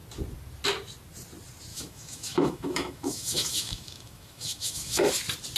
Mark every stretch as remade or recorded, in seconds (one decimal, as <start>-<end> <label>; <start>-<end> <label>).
0.0-1.7 recorded; 1.7-5.1 remade; 5.1-5.6 recorded